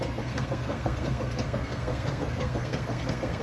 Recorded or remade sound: remade